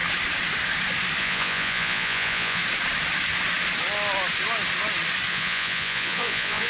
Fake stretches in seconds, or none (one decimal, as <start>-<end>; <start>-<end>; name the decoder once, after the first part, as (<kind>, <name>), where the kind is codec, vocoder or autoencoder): 1.2-2.6 (vocoder, Vocos); 5.3-6.7